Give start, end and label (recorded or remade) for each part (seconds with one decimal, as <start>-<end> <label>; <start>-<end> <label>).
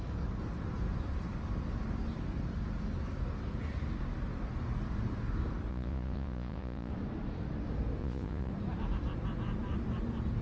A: 0.0-5.7 recorded; 5.7-6.9 remade; 6.9-8.0 recorded; 8.0-8.5 remade; 8.5-10.4 recorded